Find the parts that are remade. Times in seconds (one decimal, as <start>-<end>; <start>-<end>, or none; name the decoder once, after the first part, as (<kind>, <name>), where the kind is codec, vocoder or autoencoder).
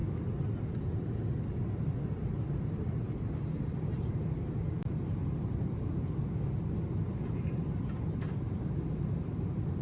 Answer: none